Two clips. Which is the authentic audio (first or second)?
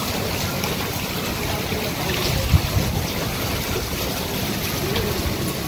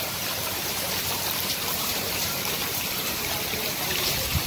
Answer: first